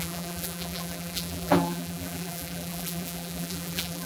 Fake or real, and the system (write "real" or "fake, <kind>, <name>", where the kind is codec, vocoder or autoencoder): fake, vocoder, BigVGAN v2